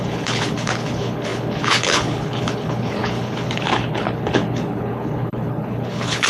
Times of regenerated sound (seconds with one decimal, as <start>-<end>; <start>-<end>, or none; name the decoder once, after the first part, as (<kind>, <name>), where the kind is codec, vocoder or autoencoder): 0.0-6.3 (codec, HILCodec)